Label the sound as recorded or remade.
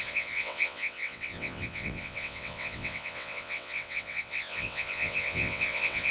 remade